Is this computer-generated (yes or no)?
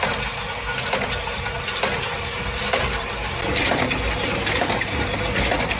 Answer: no